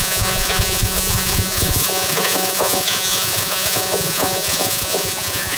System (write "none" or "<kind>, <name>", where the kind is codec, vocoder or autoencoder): vocoder, Vocos